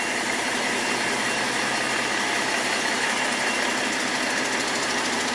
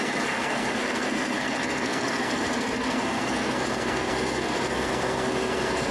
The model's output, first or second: second